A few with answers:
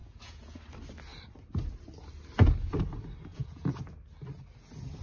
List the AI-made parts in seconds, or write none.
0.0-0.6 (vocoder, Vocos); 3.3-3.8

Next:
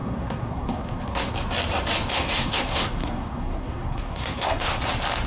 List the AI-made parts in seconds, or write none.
0.0-1.3 (codec, SNAC); 2.1-4.8

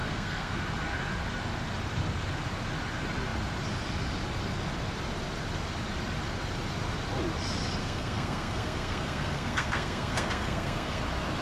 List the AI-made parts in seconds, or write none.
0.0-0.6 (codec, SNAC); 7.8-11.0

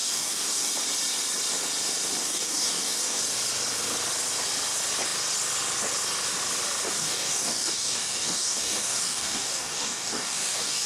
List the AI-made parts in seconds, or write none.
0.0-0.7 (codec, DAC); 2.2-3.2; 7.0-10.9

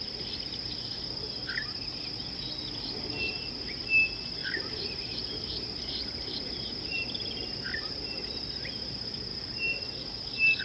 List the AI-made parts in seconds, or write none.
4.4-7.0 (vocoder, BigVGAN v2); 9.3-10.6